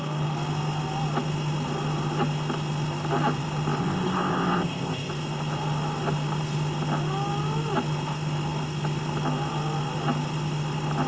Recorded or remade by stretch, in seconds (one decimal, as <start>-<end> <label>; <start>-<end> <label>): 0.0-3.8 recorded; 3.8-5.1 remade; 5.1-11.1 recorded